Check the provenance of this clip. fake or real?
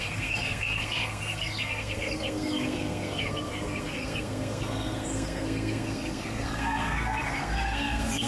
fake